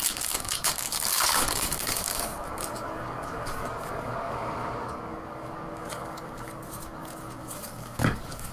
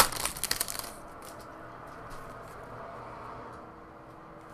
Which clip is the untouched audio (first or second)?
second